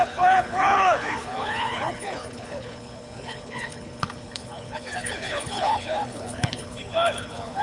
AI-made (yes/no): yes